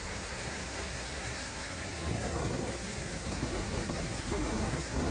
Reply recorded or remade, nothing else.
remade